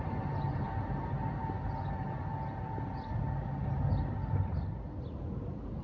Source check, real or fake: real